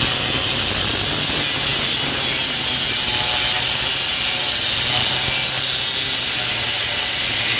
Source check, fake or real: real